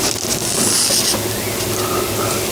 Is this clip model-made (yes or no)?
no